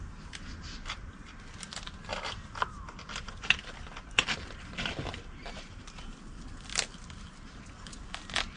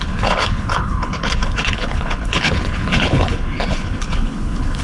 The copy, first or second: second